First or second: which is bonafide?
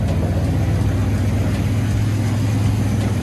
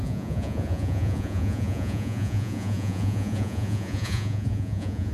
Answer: first